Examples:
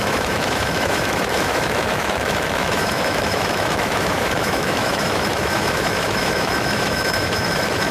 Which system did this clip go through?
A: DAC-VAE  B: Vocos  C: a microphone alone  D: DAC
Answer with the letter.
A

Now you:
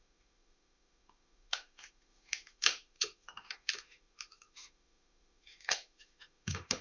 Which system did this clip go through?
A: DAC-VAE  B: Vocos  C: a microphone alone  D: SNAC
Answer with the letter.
A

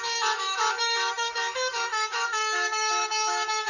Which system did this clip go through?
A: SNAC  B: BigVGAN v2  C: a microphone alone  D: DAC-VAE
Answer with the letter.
D